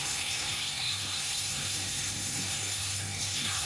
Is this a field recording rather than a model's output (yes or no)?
no